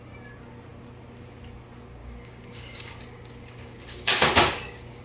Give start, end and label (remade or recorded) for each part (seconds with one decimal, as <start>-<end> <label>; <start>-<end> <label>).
0.0-2.0 recorded; 2.0-5.0 remade